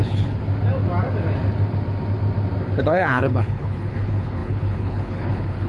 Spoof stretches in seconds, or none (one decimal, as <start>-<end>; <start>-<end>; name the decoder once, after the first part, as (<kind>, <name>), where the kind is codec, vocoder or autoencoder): 0.0-0.4 (codec, HILCodec); 2.8-5.7